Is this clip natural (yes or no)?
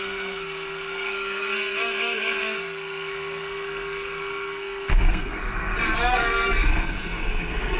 no